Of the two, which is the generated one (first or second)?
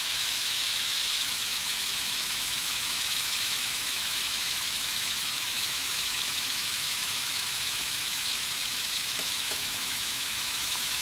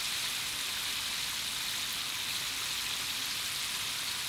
first